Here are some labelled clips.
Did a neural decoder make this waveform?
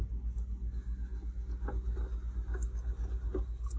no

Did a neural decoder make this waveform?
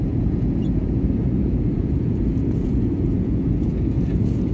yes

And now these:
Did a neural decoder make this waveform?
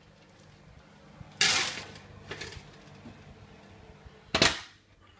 no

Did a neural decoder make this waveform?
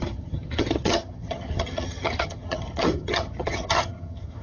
yes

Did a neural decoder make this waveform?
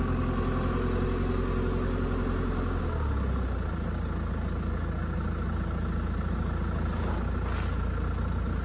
no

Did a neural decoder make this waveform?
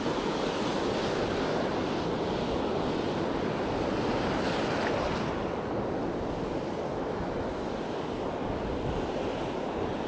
no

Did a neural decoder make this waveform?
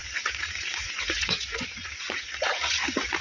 yes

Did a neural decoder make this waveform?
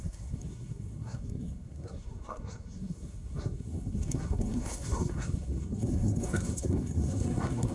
yes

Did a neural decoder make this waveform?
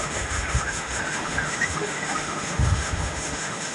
yes